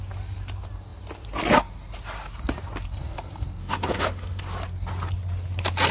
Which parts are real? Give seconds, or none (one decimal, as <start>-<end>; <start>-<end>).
0.0-3.6; 4.4-5.9